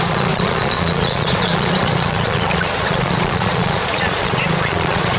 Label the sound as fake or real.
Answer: fake